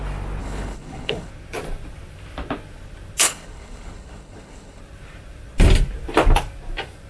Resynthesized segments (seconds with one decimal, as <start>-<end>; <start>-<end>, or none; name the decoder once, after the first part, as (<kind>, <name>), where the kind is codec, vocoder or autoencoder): 0.4-1.3 (codec, HILCodec); 3.2-4.8